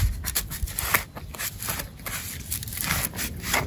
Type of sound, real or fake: real